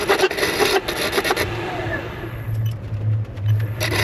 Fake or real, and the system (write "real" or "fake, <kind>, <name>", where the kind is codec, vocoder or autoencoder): real